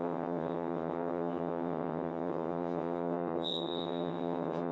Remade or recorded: remade